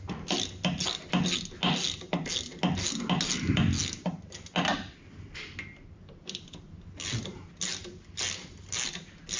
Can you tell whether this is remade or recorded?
recorded